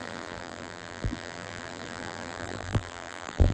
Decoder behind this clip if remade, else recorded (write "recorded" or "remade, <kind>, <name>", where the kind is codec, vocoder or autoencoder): remade, vocoder, BigVGAN v2